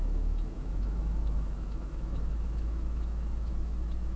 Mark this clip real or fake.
fake